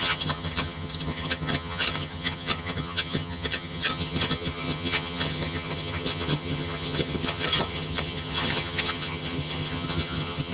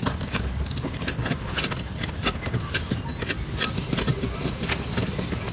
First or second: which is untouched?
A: second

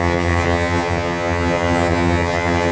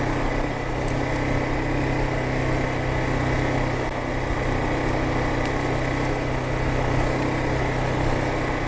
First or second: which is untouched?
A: second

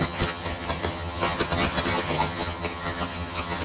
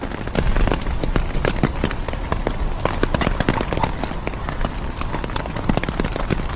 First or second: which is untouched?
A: second